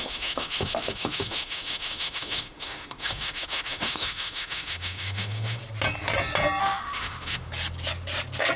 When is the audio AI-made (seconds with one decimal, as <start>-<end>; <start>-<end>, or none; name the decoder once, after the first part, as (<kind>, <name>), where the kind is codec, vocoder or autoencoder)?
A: 0.0-5.6 (autoencoder, DAC-VAE); 6.6-7.5